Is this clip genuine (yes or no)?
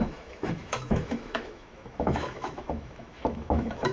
no